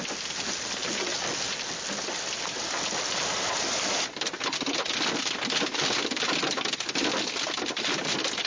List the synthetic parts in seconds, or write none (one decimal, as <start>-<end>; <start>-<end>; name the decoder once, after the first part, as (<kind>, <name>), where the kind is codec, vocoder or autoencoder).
none